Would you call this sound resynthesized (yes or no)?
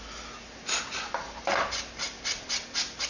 no